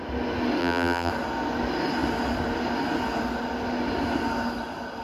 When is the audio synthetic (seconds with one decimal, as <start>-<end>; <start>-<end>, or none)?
0.6-1.1